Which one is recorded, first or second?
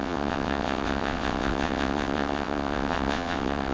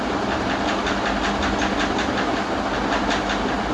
second